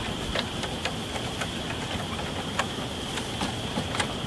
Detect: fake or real real